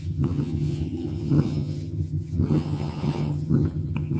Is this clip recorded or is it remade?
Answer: remade